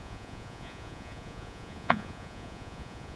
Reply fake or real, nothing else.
fake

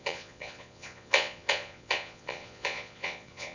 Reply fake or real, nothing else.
fake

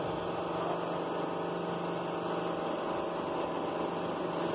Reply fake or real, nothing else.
real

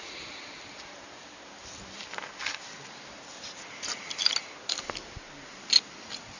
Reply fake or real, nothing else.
real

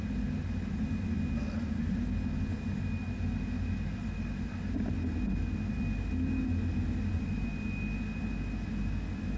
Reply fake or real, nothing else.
real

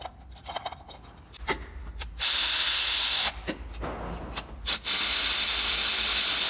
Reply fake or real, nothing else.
real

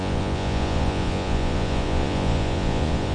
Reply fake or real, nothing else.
fake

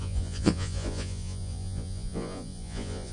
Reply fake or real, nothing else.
fake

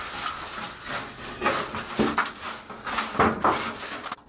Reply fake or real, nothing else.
real